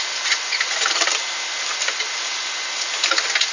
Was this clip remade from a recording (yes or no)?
no